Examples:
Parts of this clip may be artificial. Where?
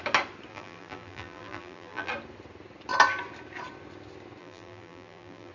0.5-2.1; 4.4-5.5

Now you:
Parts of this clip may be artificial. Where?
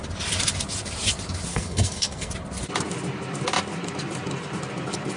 1.5-2.3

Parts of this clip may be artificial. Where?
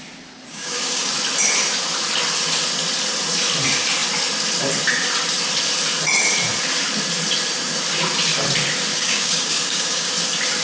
0.5-1.1; 8.9-10.1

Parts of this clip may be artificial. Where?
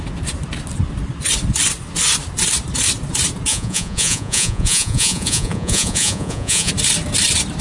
3.5-6.7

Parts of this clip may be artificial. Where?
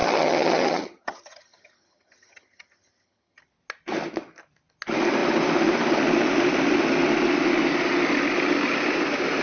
0.0-3.4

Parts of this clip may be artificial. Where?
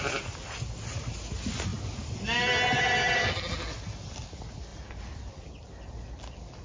4.7-5.3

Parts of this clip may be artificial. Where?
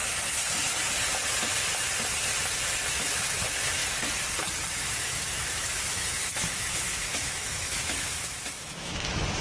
2.9-3.8; 4.7-9.4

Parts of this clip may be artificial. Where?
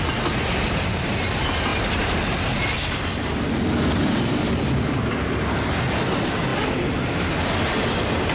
none